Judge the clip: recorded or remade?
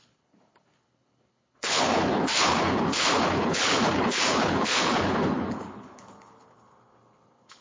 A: remade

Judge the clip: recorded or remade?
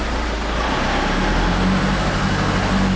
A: recorded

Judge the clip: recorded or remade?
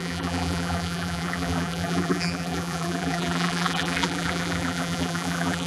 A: remade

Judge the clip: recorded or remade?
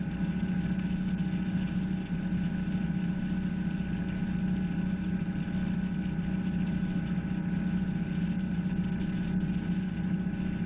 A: recorded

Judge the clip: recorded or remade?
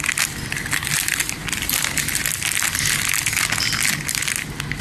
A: recorded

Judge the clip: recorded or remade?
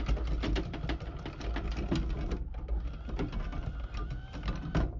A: recorded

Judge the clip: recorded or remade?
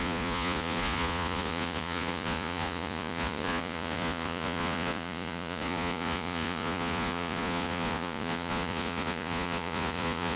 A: remade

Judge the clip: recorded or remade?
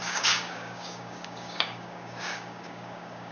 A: remade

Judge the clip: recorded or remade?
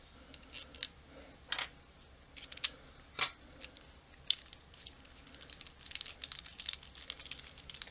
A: recorded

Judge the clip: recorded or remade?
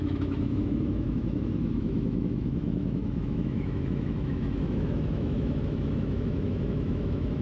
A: remade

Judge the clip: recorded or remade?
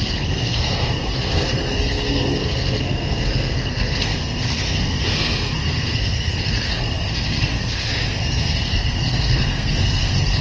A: remade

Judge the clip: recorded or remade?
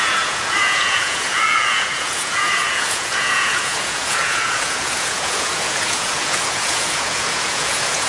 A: remade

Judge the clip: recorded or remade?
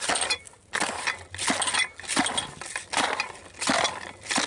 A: recorded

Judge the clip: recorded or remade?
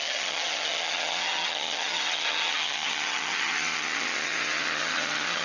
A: remade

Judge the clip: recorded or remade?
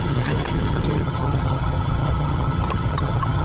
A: remade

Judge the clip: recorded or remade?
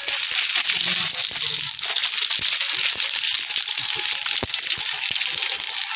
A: recorded